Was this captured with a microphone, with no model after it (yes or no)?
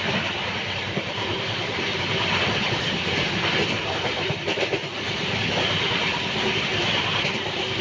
no